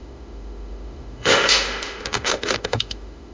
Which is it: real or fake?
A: fake